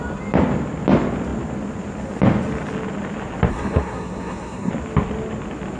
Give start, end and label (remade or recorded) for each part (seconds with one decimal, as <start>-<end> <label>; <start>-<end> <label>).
0.0-3.5 recorded; 3.5-4.7 remade; 4.7-5.8 recorded